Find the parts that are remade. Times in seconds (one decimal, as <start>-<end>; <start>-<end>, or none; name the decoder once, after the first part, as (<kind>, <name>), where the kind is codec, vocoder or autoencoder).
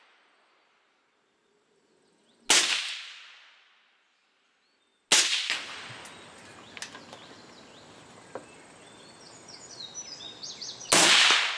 none